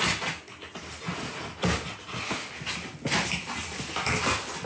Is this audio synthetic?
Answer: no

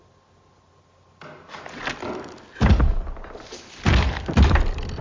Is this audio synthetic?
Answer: no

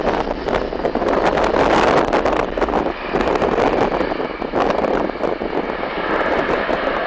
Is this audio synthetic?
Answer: no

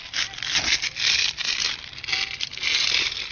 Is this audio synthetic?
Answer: no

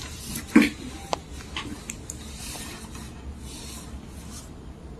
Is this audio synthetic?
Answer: no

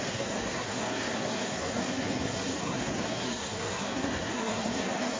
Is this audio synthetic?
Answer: yes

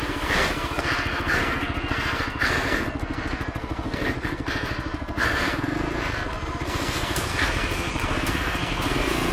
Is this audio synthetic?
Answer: yes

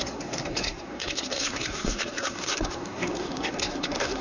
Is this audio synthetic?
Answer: yes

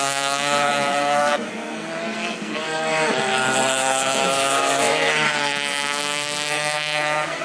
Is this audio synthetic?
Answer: yes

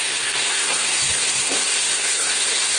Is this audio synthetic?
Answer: yes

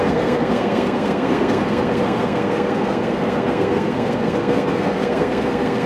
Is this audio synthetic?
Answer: yes